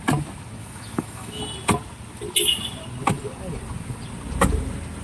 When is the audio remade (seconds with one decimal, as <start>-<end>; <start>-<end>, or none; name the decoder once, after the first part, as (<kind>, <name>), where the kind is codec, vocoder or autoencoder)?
0.6-1.4 (autoencoder, DAC-VAE)